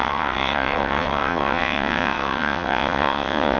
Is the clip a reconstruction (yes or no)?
yes